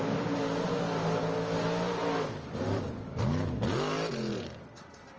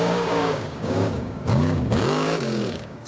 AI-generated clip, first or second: second